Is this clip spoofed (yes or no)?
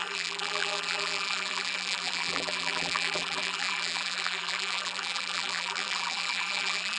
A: yes